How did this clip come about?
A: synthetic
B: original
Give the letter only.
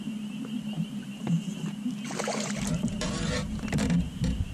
A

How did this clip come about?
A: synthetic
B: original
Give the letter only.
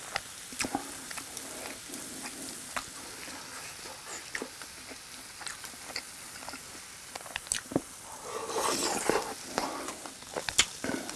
B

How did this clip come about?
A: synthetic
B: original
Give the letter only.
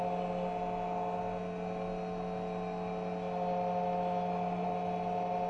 B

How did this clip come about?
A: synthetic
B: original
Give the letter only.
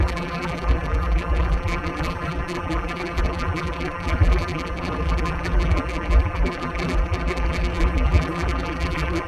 A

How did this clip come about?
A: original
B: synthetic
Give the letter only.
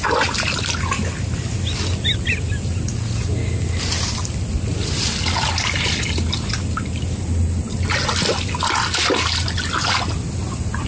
A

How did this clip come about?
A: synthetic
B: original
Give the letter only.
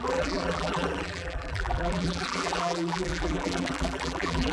A